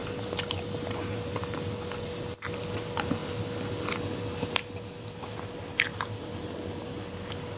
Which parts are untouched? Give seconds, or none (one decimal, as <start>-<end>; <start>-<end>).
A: 0.0-7.6